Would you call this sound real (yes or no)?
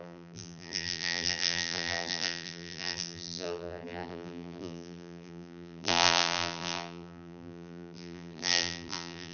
no